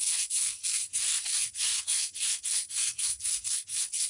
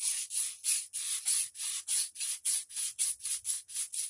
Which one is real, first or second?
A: second